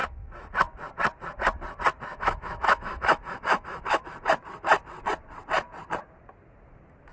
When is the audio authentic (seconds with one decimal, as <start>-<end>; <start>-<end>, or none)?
0.5-2.1; 4.0-7.1